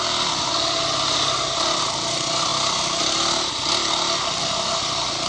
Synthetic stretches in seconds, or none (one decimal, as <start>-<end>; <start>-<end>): none